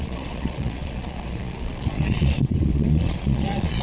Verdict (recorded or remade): remade